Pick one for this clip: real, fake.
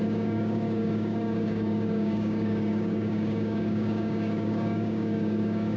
fake